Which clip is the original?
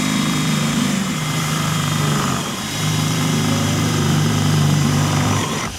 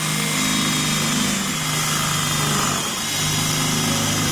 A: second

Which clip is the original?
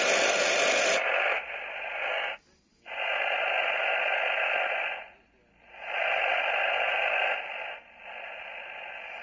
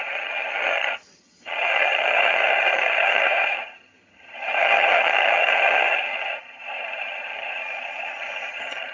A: first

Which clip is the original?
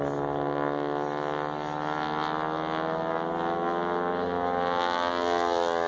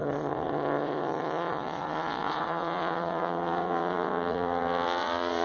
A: first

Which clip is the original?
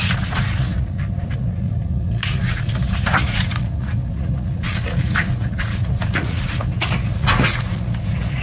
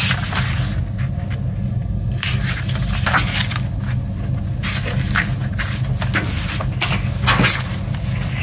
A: second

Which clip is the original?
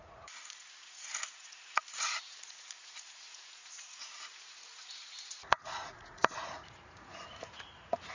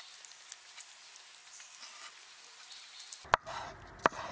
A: second